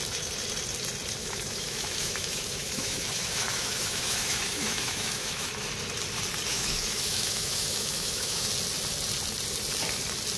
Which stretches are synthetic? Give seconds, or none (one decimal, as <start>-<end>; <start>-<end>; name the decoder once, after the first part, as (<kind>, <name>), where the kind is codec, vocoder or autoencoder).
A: 1.2-5.5 (autoencoder, DAC-VAE); 6.5-8.5